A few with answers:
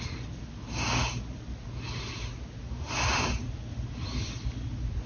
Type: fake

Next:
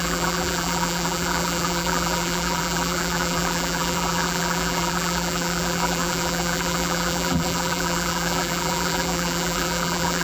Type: fake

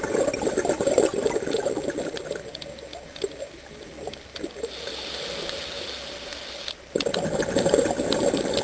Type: real